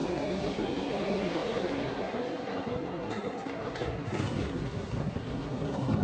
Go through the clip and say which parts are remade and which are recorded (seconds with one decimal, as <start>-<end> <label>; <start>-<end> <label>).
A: 0.0-6.0 remade